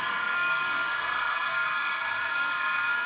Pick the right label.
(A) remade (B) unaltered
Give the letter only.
A